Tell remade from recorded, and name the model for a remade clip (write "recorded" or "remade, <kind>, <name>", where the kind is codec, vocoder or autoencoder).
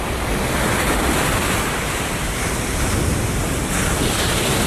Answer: recorded